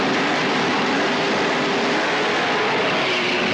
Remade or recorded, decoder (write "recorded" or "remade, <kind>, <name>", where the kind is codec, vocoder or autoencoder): recorded